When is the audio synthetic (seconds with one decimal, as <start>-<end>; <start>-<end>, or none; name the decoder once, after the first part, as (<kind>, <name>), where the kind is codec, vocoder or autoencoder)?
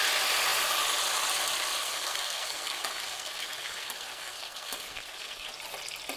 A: 1.8-5.5 (codec, SNAC)